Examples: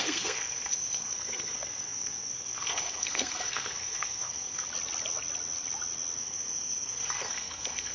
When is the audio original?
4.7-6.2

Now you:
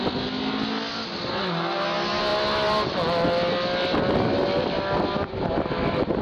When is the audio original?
0.0-6.2